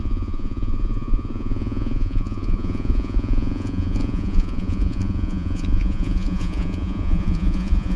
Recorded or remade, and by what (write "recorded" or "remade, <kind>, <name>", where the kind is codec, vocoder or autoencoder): remade, vocoder, Vocos